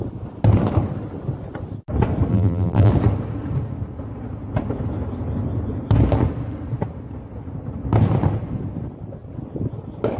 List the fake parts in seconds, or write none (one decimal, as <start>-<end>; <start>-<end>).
2.3-2.9